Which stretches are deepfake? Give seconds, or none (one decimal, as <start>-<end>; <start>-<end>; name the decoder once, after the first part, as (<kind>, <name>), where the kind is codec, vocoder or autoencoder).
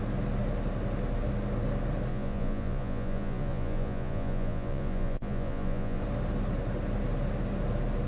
2.1-6.0 (vocoder, Vocos)